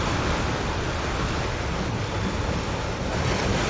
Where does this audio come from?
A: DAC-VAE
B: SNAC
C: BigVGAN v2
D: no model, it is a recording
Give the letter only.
D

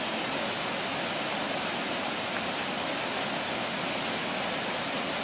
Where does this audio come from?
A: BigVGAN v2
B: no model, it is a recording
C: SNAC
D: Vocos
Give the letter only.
B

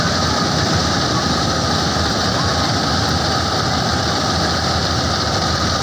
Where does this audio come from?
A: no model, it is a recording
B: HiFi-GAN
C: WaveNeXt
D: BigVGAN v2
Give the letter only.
D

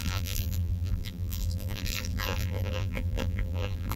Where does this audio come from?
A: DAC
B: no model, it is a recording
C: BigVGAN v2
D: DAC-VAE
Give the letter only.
C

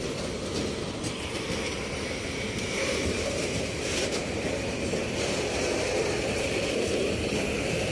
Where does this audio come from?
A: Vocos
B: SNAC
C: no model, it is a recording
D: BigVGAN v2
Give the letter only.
D